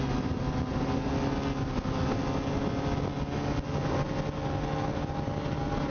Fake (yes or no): no